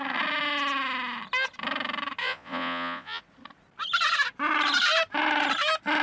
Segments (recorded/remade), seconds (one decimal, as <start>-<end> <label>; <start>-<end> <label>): 0.0-2.2 recorded; 2.2-3.2 remade; 3.2-6.0 recorded